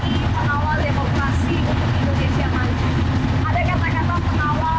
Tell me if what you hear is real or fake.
real